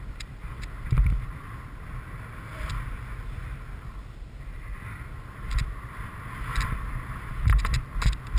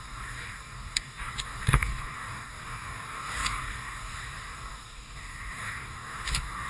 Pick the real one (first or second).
first